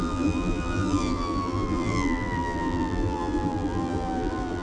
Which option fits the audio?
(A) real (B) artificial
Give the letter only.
B